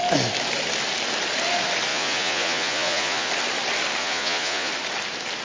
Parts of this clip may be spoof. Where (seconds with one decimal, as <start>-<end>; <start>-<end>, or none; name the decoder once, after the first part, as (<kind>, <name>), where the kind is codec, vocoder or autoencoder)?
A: 1.9-3.3 (vocoder, Vocos); 4.0-4.7